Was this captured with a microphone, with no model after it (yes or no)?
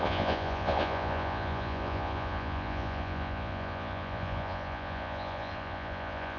no